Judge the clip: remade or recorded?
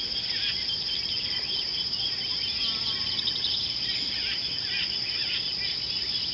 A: recorded